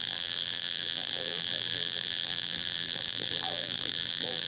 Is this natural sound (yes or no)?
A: no